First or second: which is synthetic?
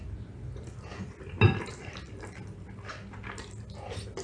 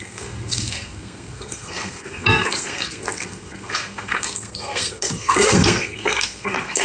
second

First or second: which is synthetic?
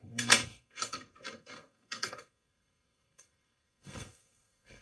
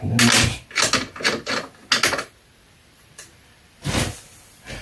first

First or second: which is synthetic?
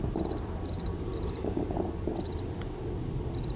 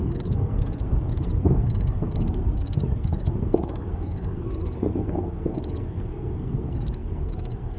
second